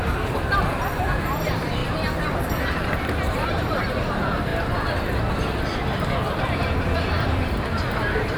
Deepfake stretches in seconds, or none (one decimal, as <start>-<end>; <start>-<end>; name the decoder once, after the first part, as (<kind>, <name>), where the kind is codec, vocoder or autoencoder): 0.0-1.8 (vocoder, BigVGAN v2); 2.8-4.5; 5.3-8.4